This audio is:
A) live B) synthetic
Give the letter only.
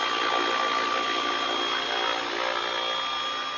A